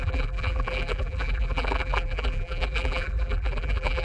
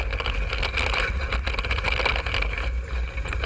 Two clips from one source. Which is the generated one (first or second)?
first